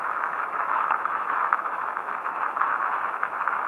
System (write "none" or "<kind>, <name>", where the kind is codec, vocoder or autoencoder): autoencoder, DAC-VAE